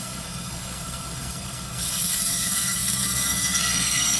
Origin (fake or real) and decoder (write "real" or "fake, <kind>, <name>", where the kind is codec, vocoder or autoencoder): fake, codec, SNAC